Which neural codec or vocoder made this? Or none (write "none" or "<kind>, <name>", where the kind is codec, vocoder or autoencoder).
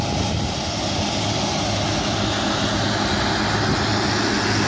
none